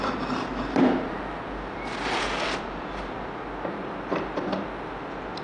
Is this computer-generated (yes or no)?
no